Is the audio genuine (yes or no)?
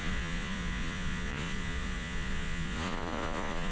no